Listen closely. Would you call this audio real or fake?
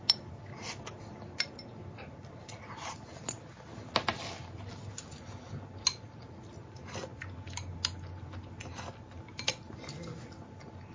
real